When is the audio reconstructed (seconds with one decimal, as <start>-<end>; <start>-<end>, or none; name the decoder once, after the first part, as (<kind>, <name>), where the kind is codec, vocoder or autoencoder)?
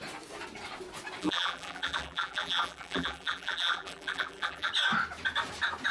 1.2-4.7 (vocoder, BigVGAN v2)